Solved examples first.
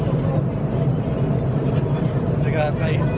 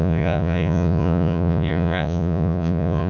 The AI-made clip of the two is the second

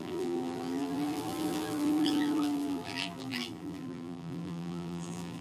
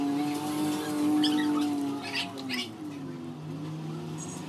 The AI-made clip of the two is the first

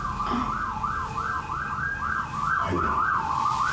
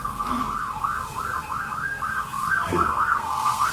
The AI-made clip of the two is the second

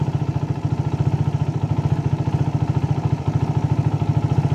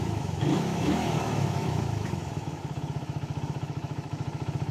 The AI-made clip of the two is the second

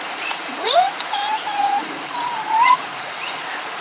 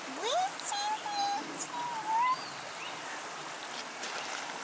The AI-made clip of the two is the first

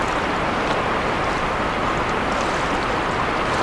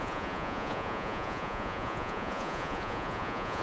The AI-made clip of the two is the second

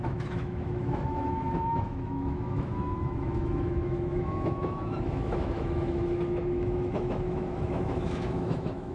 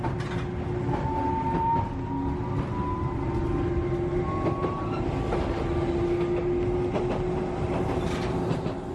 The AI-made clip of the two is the first